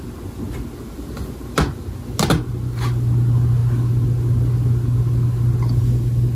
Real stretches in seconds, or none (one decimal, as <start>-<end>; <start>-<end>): 0.0-6.3